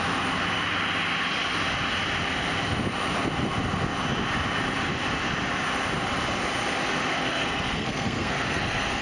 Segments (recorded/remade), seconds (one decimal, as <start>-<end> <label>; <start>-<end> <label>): 0.0-7.1 recorded; 7.1-9.0 remade